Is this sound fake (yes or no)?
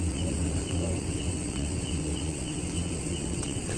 yes